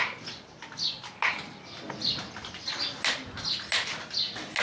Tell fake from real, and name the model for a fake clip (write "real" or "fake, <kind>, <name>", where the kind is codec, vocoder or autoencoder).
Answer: real